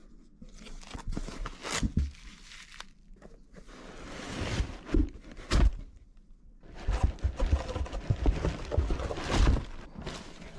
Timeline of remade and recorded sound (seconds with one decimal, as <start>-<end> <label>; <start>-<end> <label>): 0.0-10.6 recorded